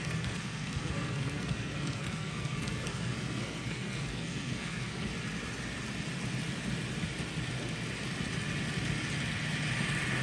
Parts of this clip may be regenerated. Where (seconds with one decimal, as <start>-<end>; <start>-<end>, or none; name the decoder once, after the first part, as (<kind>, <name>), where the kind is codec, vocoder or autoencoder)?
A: 0.0-5.1 (codec, SNAC)